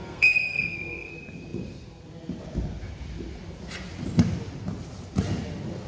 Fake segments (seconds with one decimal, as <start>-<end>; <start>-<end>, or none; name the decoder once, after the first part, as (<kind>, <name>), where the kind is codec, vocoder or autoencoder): 0.0-1.1 (codec, SNAC)